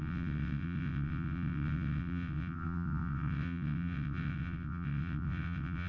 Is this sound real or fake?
fake